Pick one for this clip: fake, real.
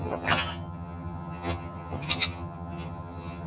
fake